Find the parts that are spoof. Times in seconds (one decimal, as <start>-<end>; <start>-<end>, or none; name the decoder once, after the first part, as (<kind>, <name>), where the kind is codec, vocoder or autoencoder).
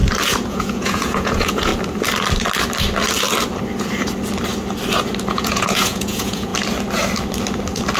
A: 0.5-1.7 (vocoder, Vocos); 5.3-6.5